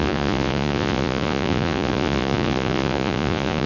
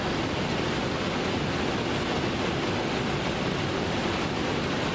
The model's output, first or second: first